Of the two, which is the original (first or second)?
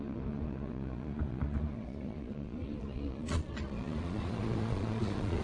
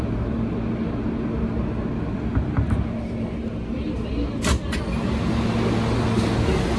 second